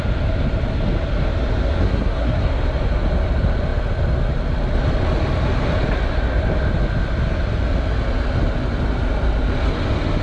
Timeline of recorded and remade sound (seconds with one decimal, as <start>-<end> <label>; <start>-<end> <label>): 0.0-1.8 recorded; 1.8-2.5 remade; 2.5-10.2 recorded